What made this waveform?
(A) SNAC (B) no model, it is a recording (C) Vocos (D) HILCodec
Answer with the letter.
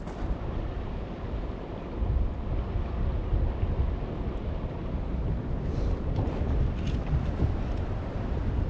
B